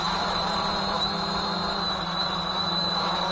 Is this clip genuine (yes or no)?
no